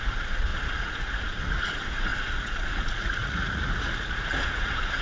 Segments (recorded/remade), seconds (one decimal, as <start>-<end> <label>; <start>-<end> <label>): 0.0-5.0 remade